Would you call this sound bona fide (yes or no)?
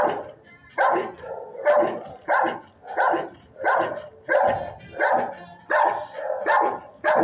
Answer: yes